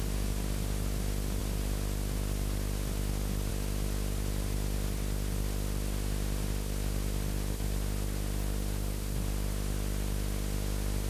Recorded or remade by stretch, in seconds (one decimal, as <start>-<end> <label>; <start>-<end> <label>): 0.0-11.1 recorded